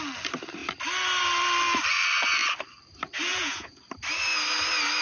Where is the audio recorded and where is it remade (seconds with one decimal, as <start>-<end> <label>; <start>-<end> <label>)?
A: 0.0-3.3 recorded; 3.3-3.8 remade; 3.8-5.0 recorded